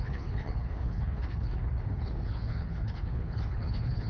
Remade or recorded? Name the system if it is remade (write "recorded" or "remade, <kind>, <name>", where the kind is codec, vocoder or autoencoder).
remade, codec, HILCodec